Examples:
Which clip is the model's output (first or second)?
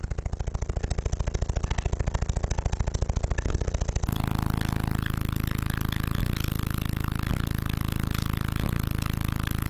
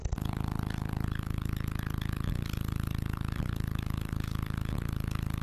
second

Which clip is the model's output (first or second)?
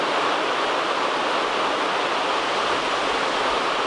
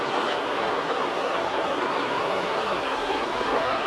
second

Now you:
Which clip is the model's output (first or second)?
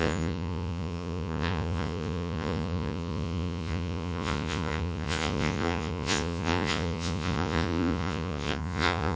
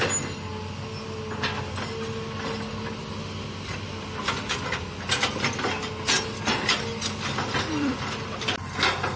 first